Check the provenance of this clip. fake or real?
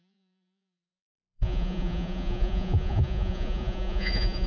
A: fake